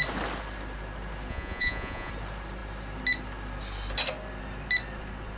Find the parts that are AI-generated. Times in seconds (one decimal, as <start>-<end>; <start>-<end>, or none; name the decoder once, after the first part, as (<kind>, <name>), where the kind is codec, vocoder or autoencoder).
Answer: 1.3-2.1 (vocoder, Vocos)